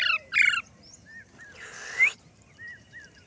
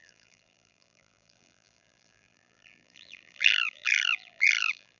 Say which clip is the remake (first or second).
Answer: second